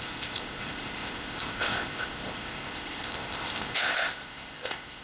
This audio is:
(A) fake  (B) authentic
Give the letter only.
A